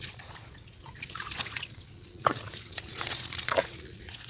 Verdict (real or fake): fake